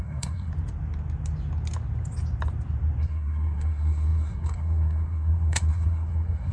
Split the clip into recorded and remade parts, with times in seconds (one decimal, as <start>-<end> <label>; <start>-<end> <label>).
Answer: 0.0-0.5 remade; 0.5-3.0 recorded; 3.0-6.5 remade